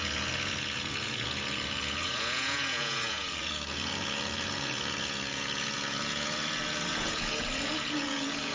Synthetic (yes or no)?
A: yes